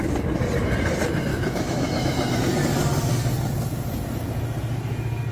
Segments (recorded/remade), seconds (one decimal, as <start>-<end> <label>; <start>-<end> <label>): 0.0-1.3 recorded; 1.3-2.4 remade; 2.4-5.3 recorded